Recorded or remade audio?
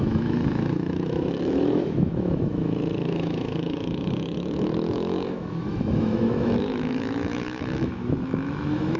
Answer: remade